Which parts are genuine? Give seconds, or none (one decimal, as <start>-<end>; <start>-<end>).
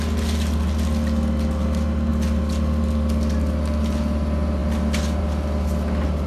0.0-6.3